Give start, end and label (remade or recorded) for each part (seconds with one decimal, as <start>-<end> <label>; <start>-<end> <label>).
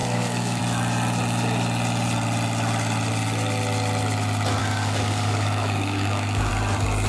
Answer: 0.0-0.6 remade; 0.6-4.6 recorded; 4.6-6.5 remade; 6.5-7.1 recorded